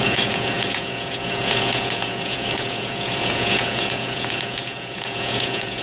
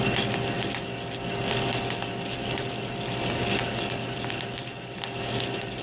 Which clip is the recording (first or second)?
second